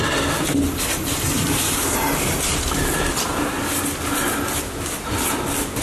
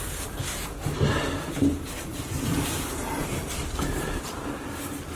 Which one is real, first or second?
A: first